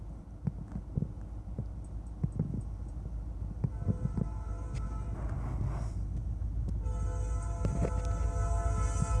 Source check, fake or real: real